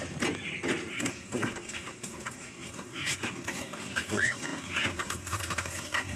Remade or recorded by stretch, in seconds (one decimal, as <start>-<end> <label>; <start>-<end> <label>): 0.0-0.9 recorded; 0.9-6.2 remade